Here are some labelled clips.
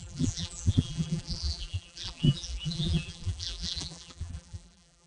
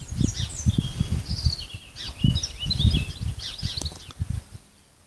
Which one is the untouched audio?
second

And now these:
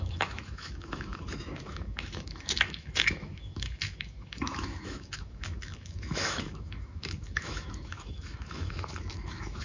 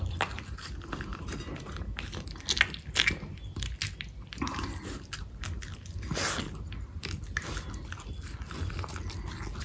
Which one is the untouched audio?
second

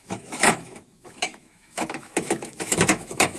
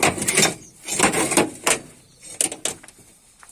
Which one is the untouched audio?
second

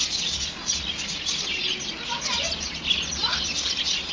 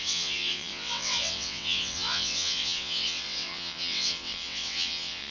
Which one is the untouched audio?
first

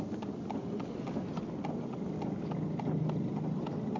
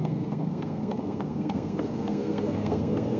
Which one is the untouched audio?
first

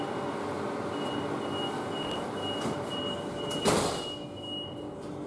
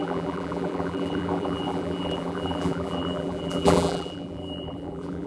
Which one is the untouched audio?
first